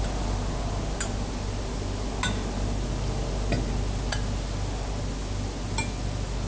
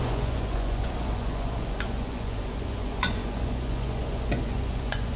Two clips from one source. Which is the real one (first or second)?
first